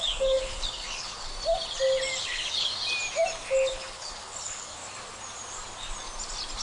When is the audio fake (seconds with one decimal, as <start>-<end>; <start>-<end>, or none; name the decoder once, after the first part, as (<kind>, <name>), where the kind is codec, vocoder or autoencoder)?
0.0-1.3 (codec, HILCodec); 2.2-2.7; 3.7-4.8

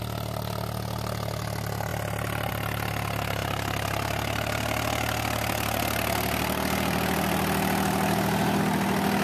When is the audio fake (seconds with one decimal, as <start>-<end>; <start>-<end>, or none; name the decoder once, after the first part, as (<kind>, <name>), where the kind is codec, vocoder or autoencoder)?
none